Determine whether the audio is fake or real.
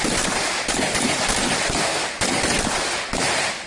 real